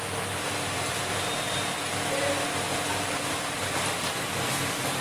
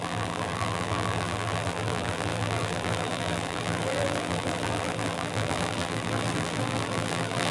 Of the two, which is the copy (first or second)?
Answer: second